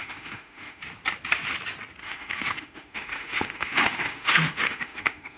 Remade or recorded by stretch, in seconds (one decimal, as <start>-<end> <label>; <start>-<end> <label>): 0.0-0.8 remade; 0.8-2.0 recorded; 2.0-5.4 remade